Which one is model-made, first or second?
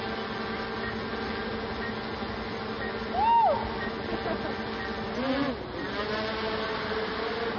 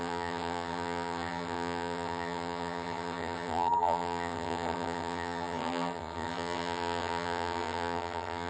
second